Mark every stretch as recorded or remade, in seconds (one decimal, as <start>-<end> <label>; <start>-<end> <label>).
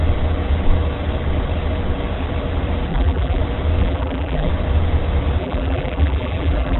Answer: 0.0-2.9 recorded; 2.9-3.4 remade; 3.4-3.8 recorded; 3.8-4.5 remade; 4.5-5.4 recorded; 5.4-6.8 remade